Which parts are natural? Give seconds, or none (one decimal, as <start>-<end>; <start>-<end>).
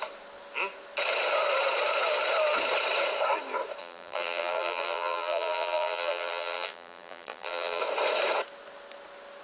0.0-3.8; 7.8-9.4